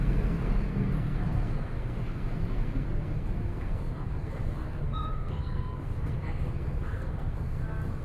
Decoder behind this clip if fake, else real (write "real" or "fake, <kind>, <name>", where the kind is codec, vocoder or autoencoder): fake, codec, SNAC